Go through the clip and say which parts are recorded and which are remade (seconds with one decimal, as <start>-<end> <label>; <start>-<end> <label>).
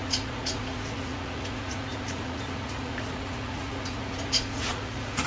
0.0-5.3 remade